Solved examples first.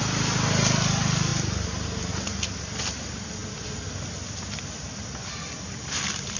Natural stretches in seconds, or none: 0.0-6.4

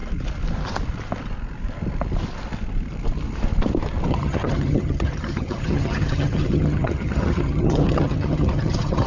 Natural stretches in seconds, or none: 0.0-4.1

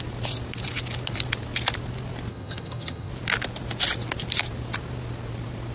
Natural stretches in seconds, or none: 0.0-2.3; 3.1-5.7

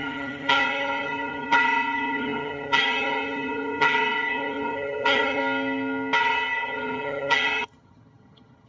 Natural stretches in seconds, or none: 5.4-6.2